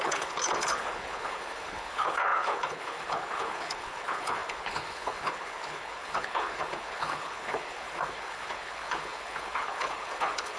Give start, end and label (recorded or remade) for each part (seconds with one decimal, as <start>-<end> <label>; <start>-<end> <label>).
0.0-10.6 remade